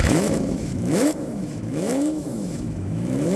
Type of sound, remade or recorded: remade